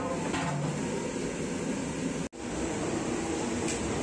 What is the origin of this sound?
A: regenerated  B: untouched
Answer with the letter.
B